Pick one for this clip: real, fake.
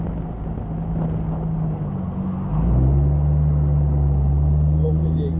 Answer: real